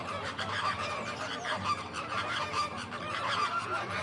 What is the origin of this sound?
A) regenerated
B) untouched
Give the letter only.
A